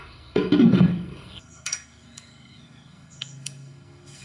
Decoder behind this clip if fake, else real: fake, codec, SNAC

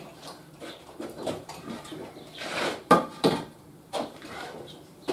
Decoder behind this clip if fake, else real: fake, vocoder, BigVGAN v2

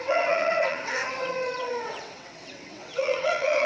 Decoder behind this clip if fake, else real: fake, vocoder, WaveNeXt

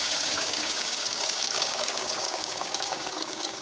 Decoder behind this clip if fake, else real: fake, codec, DAC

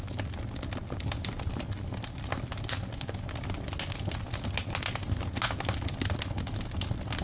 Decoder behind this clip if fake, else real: real